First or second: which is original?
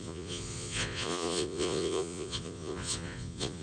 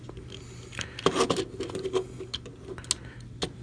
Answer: second